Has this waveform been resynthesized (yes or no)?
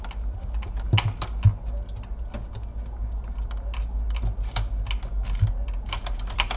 no